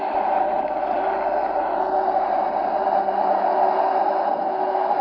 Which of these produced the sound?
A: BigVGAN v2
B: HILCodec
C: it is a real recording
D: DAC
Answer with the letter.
C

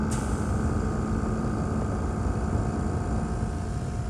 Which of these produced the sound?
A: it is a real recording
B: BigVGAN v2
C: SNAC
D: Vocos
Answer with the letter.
A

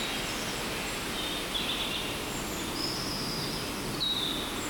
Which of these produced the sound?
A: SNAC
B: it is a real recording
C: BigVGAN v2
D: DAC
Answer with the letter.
B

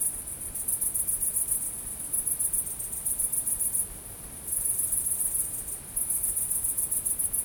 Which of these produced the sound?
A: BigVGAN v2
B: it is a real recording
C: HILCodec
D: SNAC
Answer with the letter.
B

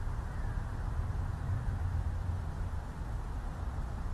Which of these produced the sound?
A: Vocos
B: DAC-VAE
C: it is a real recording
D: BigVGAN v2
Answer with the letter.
C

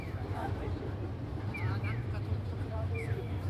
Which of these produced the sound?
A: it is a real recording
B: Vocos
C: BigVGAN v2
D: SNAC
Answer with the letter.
C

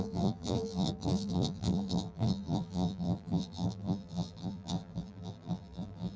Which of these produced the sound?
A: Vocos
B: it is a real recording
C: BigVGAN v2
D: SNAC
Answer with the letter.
C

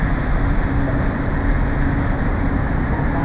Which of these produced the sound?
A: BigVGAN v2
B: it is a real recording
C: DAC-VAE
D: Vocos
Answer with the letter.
B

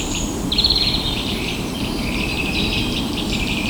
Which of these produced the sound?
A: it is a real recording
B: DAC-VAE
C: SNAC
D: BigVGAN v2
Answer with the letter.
D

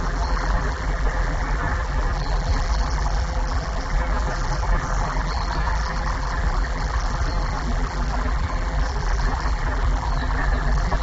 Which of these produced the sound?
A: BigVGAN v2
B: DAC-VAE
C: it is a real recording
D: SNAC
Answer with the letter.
A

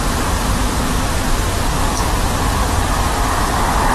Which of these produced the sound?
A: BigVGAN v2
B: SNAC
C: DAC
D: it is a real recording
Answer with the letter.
D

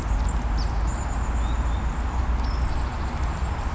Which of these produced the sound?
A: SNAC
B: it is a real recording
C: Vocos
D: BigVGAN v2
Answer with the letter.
B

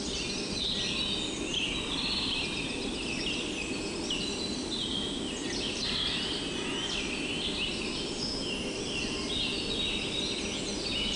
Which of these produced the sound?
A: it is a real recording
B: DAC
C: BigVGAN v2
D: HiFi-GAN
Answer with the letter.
A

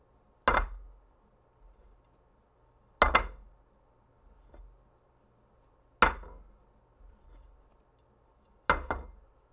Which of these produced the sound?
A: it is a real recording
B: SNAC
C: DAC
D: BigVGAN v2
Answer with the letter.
A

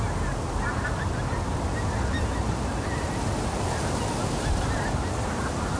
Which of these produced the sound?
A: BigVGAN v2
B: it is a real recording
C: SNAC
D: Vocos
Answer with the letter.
B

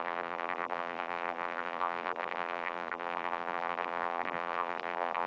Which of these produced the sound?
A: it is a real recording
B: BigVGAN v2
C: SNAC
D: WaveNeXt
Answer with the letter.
B